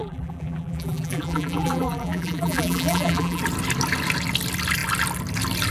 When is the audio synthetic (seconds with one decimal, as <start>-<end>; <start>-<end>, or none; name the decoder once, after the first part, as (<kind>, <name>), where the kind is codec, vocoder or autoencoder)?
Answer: 0.0-3.4 (vocoder, BigVGAN v2)